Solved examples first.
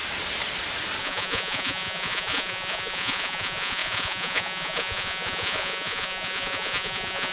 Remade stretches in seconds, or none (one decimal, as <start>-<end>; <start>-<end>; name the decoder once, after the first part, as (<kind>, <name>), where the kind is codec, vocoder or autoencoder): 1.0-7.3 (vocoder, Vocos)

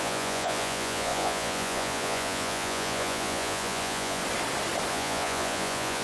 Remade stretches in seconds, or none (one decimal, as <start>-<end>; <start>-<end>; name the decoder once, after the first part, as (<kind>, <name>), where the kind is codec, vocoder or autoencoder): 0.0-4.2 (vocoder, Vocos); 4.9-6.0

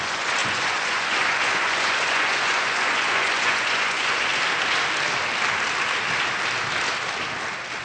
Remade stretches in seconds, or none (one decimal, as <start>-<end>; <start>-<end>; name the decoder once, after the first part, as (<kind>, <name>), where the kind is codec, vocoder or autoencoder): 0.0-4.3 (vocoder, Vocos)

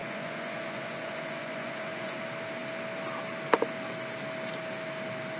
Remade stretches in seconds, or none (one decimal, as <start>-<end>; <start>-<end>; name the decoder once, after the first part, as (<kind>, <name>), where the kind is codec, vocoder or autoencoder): 0.0-2.2 (vocoder, Vocos)

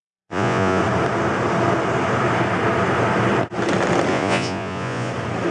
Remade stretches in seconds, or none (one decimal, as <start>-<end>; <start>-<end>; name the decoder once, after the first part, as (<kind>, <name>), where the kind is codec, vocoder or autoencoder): 0.0-0.8 (vocoder, Vocos); 4.1-5.1